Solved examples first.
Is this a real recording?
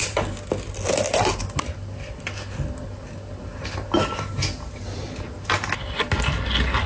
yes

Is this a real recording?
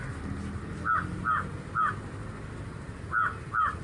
yes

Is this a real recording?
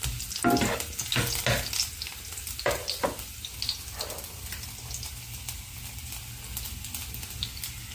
yes